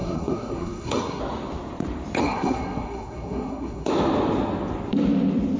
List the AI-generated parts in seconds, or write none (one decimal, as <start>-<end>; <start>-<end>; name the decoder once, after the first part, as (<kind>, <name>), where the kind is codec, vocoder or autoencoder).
0.0-1.2 (codec, SNAC); 2.2-3.9